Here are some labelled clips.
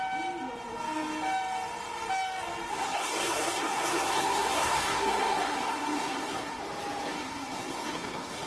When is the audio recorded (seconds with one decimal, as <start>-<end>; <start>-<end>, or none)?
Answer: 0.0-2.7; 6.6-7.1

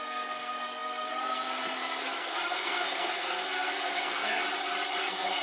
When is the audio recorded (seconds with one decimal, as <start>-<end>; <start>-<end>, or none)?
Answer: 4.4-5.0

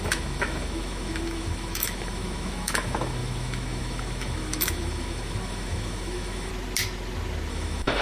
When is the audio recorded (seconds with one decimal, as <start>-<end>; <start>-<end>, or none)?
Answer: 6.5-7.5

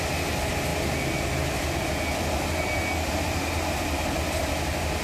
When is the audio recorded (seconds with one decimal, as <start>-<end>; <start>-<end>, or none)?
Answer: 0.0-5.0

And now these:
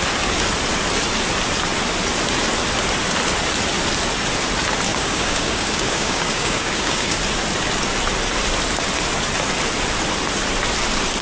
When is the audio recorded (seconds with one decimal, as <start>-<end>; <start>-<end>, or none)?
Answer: 0.0-4.9; 7.2-11.2